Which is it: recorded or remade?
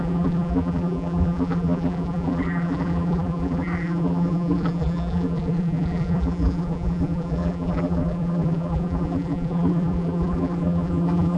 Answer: remade